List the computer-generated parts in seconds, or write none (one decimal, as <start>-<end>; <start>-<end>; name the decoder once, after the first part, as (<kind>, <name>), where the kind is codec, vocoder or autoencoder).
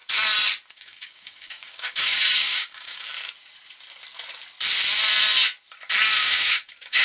0.7-3.1 (codec, DAC); 6.2-7.0